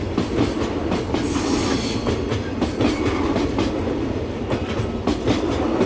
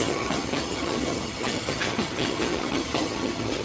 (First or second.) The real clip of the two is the first